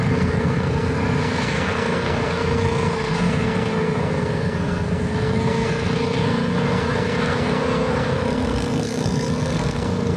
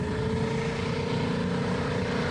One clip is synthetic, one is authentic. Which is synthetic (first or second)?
first